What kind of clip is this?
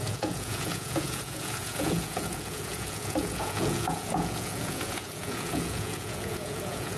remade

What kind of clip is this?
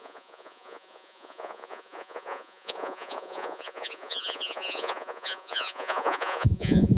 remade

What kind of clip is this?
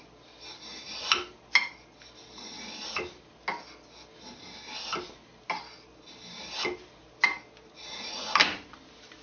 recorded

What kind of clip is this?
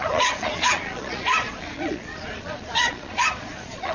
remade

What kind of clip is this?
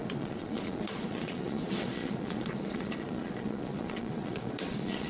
remade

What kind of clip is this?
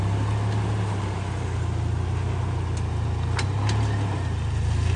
recorded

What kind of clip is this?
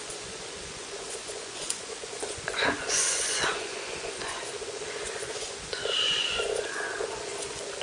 remade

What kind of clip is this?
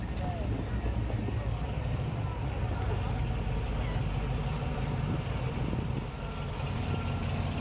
recorded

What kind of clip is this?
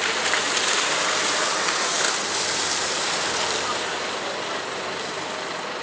recorded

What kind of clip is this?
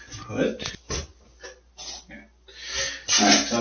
recorded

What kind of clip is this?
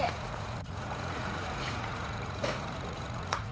remade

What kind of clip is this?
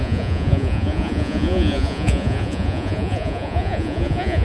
remade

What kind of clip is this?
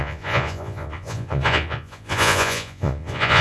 remade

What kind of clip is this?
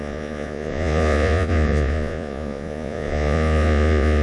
remade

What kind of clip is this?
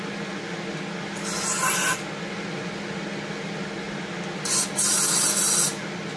recorded